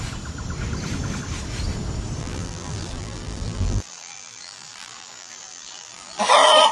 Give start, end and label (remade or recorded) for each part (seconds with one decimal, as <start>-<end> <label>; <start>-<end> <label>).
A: 0.0-2.2 recorded; 2.2-6.2 remade; 6.2-6.7 recorded